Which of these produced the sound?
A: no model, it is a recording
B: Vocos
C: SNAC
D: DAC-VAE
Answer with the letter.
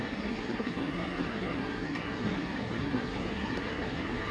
C